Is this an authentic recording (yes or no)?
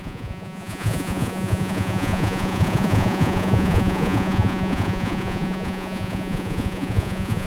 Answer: no